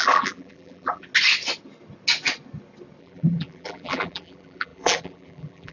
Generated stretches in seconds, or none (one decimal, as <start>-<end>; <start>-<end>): 0.0-1.1; 3.0-5.7